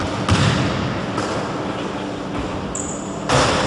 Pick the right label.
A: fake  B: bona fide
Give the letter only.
B